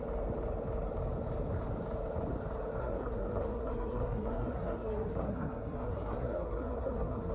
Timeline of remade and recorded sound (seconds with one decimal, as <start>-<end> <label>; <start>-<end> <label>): 0.0-2.8 recorded; 2.8-7.3 remade